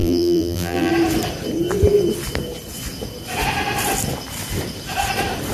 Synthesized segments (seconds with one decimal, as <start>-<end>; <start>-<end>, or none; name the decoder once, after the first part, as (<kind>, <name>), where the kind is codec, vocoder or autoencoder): 0.0-0.9 (vocoder, BigVGAN v2)